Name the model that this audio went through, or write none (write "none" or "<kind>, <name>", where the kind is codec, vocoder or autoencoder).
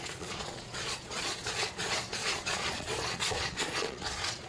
vocoder, Vocos